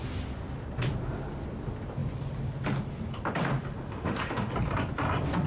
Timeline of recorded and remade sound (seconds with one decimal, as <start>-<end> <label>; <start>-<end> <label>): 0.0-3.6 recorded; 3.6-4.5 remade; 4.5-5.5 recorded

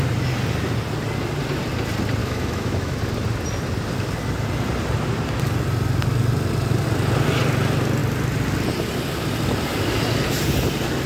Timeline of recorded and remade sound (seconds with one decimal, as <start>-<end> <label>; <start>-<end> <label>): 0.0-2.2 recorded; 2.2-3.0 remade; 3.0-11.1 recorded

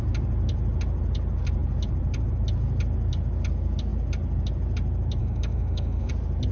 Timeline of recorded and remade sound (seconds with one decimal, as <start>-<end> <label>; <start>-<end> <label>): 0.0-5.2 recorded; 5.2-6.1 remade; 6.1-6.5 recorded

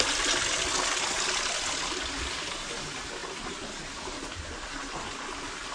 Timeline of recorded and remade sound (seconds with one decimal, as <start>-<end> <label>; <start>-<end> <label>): 0.0-5.7 recorded